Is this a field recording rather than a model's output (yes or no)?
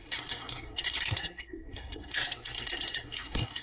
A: no